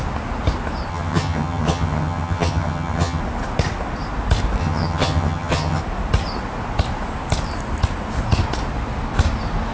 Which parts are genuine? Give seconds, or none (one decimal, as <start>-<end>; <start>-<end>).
0.0-0.9; 3.2-4.6; 5.8-9.7